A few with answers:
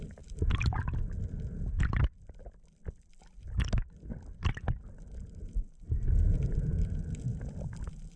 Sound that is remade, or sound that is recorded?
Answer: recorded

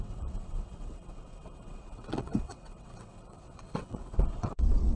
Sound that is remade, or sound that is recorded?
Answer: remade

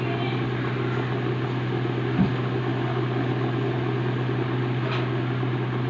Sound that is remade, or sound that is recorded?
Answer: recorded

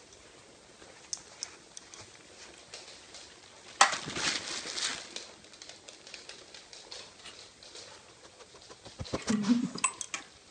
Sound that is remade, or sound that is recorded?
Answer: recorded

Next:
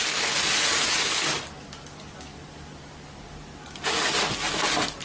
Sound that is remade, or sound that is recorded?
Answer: recorded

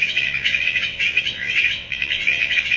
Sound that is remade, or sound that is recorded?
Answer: remade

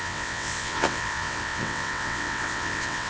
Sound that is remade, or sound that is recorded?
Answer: remade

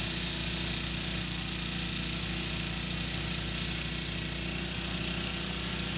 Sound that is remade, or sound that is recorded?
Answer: recorded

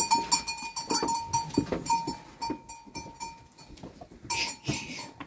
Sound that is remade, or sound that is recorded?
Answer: recorded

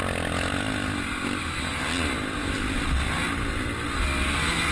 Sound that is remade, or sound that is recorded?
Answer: recorded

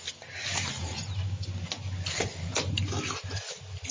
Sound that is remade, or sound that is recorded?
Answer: recorded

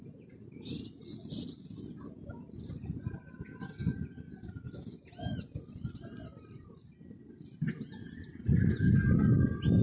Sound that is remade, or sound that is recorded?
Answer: recorded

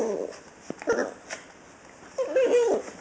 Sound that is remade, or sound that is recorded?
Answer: recorded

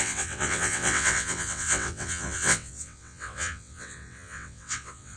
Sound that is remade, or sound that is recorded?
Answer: remade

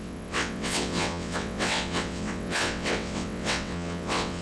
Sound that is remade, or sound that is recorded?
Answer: remade